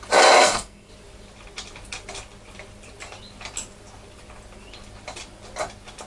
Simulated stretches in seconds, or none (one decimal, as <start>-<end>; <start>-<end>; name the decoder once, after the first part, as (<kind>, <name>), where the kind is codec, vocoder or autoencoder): 0.4-0.9 (codec, SNAC)